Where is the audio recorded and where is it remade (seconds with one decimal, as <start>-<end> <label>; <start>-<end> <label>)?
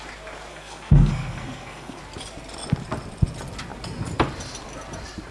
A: 0.0-0.5 recorded; 0.5-2.0 remade; 2.0-5.3 recorded